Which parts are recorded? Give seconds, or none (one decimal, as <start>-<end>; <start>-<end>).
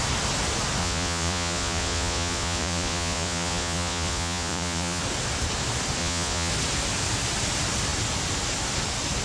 0.0-0.8; 5.0-6.0; 6.5-9.2